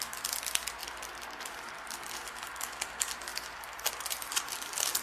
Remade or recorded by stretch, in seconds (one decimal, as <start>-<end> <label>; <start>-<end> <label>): 0.0-5.0 recorded